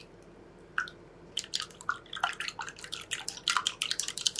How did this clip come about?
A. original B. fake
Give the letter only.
A